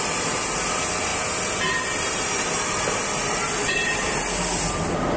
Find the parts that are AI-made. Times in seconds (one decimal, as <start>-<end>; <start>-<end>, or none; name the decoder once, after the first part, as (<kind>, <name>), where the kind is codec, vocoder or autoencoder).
1.1-4.2 (vocoder, BigVGAN v2)